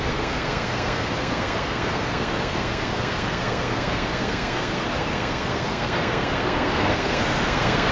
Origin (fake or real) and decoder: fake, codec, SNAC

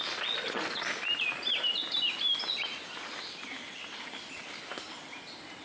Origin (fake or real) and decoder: real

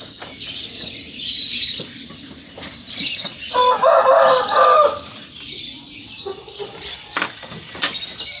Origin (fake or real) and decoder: real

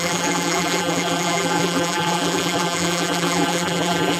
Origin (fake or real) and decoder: fake, vocoder, BigVGAN v2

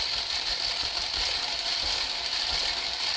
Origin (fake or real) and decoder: real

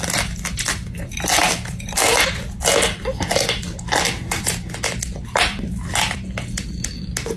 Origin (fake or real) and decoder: real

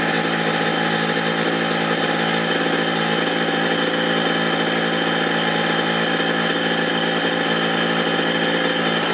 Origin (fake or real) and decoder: real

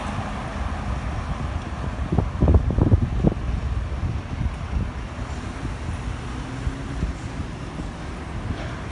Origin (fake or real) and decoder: real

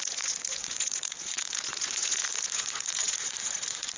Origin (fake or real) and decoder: fake, vocoder, Vocos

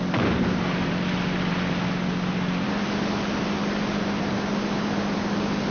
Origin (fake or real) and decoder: real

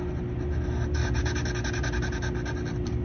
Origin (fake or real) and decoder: real